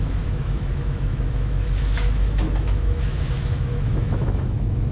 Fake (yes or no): yes